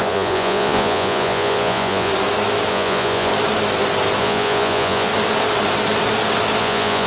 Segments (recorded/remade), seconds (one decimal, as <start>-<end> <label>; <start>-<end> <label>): 0.0-2.1 remade; 2.1-2.7 recorded; 2.7-3.3 remade; 3.3-4.2 recorded; 4.2-5.1 remade; 5.1-6.6 recorded; 6.6-7.1 remade